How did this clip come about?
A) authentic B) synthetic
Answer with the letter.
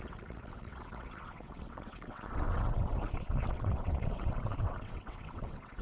B